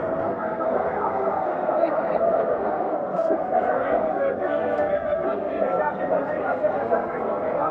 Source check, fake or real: fake